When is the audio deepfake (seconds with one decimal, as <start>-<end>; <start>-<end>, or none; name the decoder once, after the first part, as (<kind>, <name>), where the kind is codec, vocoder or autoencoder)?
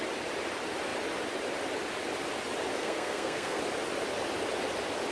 2.8-3.6 (codec, SNAC)